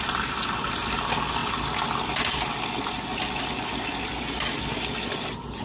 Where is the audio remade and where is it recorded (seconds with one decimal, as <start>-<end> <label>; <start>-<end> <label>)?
0.0-5.6 recorded